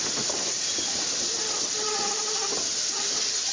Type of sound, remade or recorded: recorded